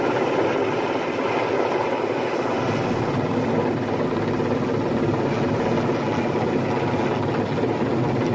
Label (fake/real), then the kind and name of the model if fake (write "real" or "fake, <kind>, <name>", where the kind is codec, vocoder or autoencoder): real